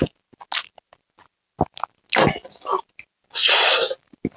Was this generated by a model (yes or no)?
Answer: no